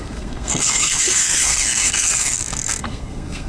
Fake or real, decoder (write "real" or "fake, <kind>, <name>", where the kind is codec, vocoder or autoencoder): fake, codec, SNAC